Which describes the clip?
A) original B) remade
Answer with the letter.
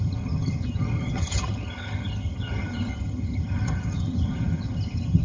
B